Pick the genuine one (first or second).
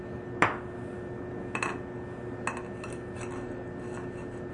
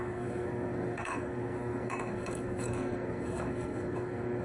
first